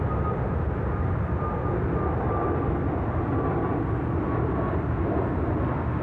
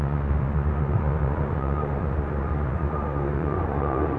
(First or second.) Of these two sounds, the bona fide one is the first